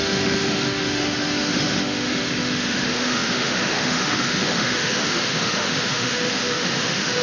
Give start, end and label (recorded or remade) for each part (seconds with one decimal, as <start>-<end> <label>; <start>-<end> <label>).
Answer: 0.0-7.2 remade